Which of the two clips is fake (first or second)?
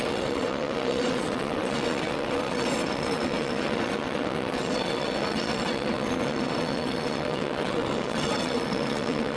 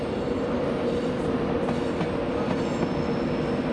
first